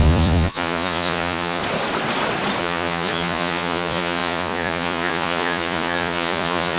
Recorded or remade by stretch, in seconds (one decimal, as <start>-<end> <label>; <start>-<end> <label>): 0.0-1.6 remade; 1.6-2.6 recorded; 2.6-6.8 remade